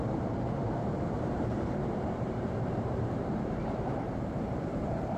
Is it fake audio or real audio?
fake